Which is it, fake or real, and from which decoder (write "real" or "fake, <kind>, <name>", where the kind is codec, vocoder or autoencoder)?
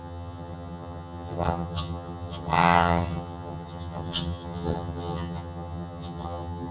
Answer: fake, vocoder, HiFi-GAN